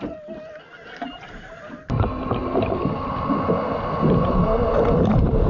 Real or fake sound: real